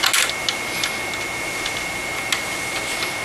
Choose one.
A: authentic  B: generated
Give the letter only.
A